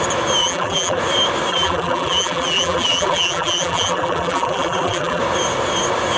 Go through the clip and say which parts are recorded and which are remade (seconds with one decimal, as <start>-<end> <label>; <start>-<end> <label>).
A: 0.0-0.4 recorded; 0.4-1.0 remade; 1.0-1.5 recorded; 1.5-5.2 remade; 5.2-6.2 recorded